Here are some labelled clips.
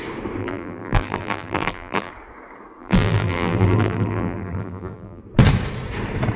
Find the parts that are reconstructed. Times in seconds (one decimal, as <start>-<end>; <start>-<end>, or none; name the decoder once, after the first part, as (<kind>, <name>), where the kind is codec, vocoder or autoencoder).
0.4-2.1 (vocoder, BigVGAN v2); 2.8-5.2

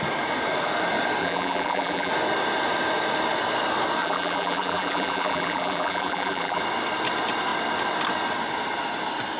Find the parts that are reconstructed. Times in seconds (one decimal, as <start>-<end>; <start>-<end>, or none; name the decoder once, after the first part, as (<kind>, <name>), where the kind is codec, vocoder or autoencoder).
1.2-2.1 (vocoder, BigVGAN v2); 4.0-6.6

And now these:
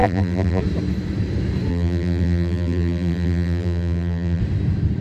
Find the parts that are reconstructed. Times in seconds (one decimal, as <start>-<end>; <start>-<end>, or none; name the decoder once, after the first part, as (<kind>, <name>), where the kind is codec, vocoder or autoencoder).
0.0-0.6 (vocoder, BigVGAN v2); 1.7-4.4